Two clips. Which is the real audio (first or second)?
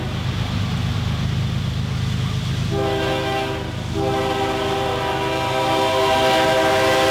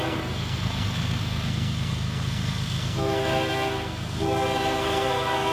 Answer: first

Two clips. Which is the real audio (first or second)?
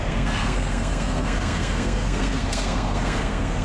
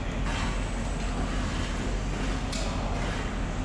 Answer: second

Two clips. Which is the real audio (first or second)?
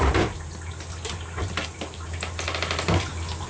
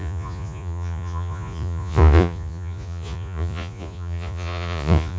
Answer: first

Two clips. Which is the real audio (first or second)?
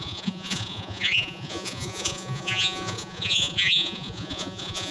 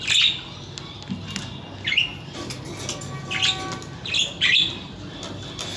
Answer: second